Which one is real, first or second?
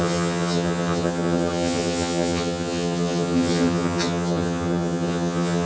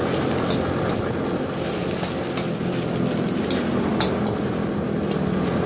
second